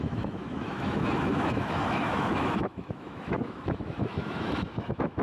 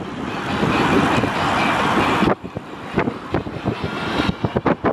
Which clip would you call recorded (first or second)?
second